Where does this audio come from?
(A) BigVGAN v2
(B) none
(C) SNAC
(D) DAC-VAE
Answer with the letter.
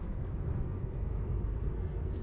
C